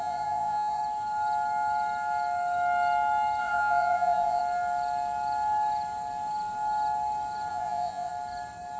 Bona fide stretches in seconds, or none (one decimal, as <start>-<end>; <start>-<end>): 0.8-3.4; 4.4-7.5; 8.1-8.8